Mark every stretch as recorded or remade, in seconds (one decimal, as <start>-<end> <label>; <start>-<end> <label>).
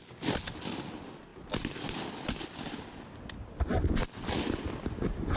0.0-5.4 recorded